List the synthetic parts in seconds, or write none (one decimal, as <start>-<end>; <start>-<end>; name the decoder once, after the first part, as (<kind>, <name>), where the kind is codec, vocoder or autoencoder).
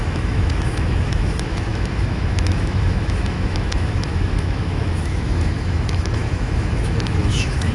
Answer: 0.0-7.7 (autoencoder, DAC-VAE)